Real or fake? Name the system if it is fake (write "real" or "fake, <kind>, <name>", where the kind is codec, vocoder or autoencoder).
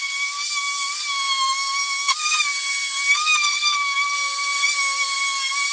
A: real